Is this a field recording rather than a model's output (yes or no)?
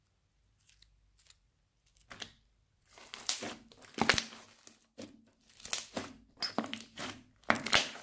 yes